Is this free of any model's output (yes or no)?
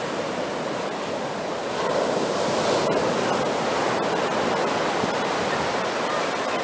yes